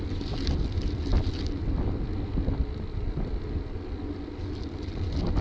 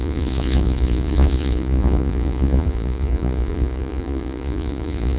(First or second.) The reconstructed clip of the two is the second